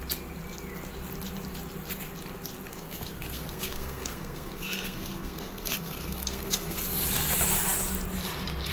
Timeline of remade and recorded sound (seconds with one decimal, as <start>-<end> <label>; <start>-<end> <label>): 0.0-2.7 recorded; 2.7-6.8 remade; 6.8-8.7 recorded